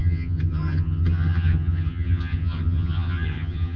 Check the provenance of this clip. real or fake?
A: fake